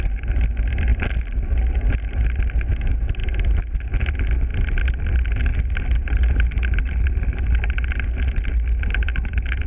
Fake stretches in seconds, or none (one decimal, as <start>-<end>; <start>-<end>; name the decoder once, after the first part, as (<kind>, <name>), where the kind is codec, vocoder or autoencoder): none

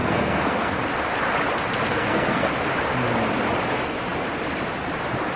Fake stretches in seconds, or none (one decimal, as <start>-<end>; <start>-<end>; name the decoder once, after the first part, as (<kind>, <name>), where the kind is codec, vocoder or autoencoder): 0.0-0.7 (codec, SNAC); 1.9-2.5

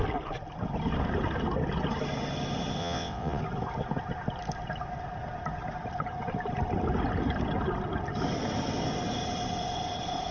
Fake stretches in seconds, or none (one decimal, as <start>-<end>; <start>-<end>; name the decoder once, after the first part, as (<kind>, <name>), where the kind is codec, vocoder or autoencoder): 2.8-3.4 (vocoder, WaveNeXt)

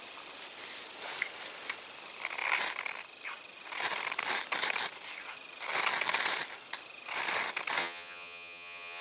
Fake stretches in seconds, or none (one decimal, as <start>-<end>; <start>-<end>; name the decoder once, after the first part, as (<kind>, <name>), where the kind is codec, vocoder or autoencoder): 7.8-9.0 (vocoder, HiFi-GAN)

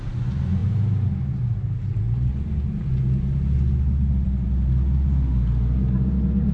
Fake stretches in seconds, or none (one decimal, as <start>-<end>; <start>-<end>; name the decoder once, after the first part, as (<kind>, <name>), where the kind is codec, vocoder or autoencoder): none

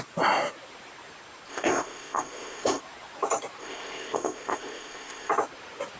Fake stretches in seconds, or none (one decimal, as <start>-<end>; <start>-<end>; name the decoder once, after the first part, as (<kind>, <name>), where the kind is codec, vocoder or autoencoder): 1.5-2.8 (codec, ZipCodec); 3.6-5.3

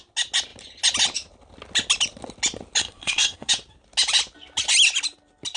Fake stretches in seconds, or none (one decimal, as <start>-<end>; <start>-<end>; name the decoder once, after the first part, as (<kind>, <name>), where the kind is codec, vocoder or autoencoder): 2.8-3.5 (codec, SNAC)